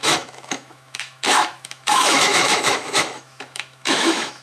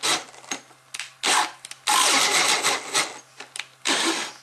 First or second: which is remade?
first